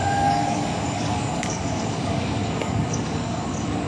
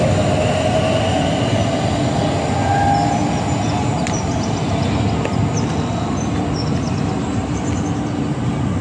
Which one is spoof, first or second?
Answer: first